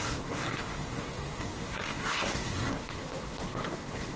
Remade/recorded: remade